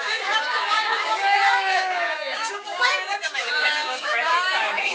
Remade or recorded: remade